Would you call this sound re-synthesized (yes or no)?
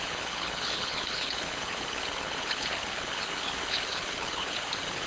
yes